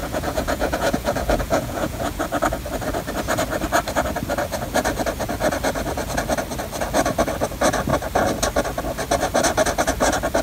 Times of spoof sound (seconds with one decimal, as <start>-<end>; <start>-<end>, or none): 0.0-2.2